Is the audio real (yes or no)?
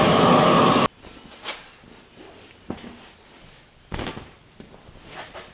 yes